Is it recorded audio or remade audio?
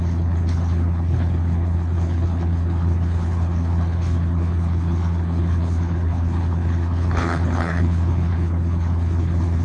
remade